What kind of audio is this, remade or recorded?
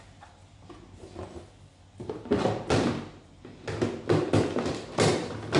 recorded